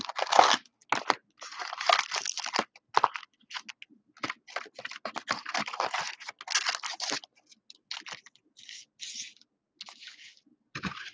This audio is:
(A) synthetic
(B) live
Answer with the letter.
B